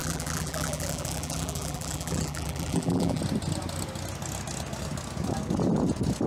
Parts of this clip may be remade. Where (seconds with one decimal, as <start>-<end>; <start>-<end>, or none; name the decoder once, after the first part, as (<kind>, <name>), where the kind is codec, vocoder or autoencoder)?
0.0-3.2 (vocoder, BigVGAN v2)